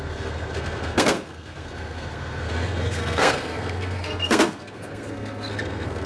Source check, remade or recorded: remade